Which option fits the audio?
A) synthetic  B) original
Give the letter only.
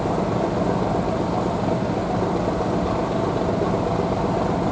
B